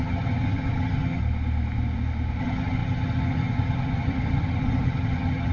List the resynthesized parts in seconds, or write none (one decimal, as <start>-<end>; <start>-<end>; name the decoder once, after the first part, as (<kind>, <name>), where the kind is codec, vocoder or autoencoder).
0.0-1.2 (vocoder, HiFi-GAN); 2.4-5.5